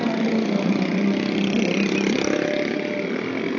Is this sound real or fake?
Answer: real